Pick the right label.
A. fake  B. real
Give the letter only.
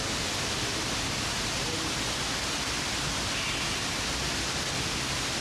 B